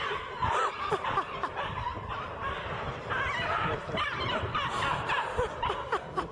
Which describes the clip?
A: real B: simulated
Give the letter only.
A